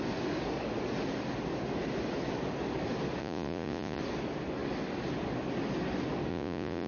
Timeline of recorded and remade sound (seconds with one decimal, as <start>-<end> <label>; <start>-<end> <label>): 0.0-3.2 recorded; 3.2-4.0 remade; 4.0-6.3 recorded; 6.3-6.9 remade